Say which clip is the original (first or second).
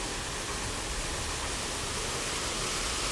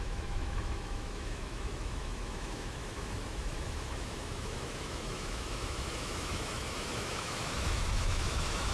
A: first